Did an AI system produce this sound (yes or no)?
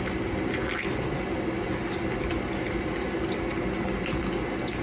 no